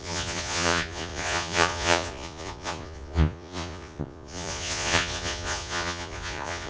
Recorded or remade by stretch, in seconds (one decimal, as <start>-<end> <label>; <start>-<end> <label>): 0.0-6.7 remade